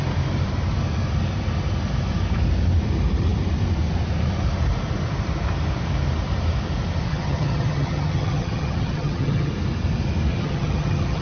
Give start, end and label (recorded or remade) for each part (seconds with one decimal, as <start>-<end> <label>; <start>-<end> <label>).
0.0-7.1 recorded; 7.1-9.5 remade; 9.5-10.3 recorded; 10.3-11.2 remade